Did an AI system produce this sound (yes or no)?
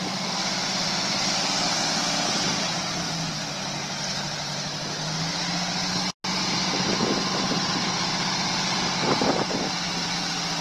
no